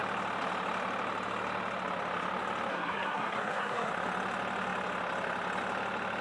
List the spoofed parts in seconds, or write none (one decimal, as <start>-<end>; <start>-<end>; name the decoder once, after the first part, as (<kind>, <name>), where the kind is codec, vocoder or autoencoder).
2.7-3.9 (codec, SNAC)